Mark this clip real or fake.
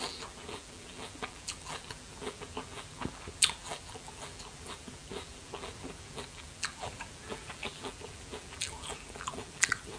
fake